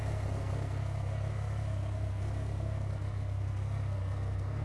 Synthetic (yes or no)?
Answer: yes